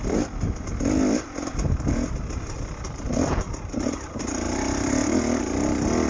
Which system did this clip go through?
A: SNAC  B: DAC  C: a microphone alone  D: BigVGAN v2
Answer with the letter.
C